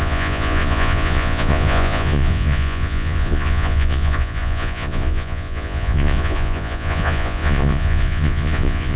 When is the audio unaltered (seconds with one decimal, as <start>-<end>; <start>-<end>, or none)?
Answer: none

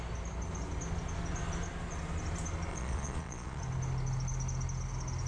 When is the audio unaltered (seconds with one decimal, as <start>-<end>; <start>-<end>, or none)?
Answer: 0.0-2.7; 3.6-5.3

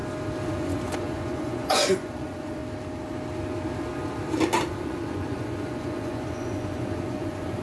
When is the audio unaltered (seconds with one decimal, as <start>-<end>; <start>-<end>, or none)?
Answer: 0.0-0.5; 2.6-4.7

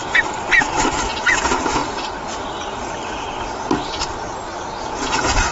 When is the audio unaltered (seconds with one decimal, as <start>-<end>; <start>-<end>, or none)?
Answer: 0.0-1.2; 1.8-4.8

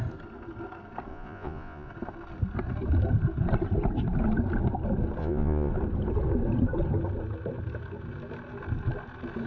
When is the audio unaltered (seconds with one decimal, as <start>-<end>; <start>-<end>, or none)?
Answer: 0.0-1.1; 1.9-5.2; 5.7-9.5